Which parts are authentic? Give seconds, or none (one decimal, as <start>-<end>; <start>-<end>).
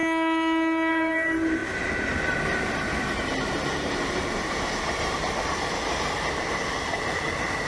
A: 0.0-0.9